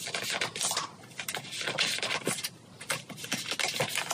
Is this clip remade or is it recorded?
recorded